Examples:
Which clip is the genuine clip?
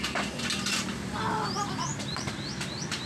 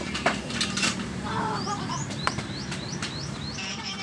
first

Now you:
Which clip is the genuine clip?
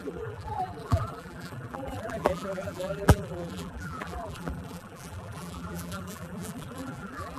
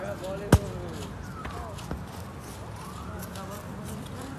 second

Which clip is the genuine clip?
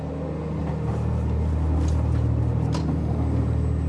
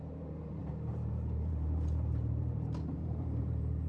first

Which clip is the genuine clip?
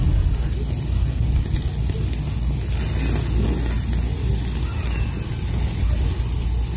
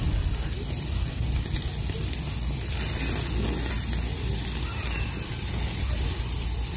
first